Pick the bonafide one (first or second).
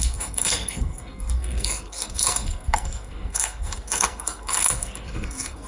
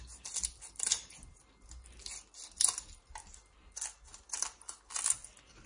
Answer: second